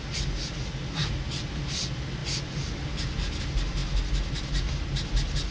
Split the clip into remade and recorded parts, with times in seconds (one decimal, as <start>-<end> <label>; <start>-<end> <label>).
0.0-5.5 recorded